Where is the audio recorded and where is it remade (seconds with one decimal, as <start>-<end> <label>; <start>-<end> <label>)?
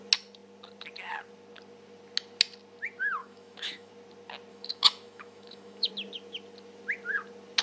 0.0-3.2 recorded; 3.2-3.9 remade; 3.9-4.5 recorded; 4.5-5.9 remade; 5.9-7.6 recorded